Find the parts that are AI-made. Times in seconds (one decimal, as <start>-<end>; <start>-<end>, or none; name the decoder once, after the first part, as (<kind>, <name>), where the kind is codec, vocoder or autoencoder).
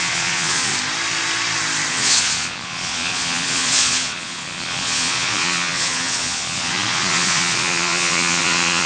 0.0-0.7 (vocoder, Vocos); 1.9-8.9